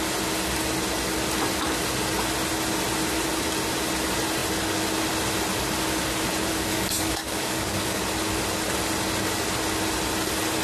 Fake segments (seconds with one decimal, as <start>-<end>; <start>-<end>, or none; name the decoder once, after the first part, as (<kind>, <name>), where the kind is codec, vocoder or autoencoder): 6.5-8.0 (codec, DAC)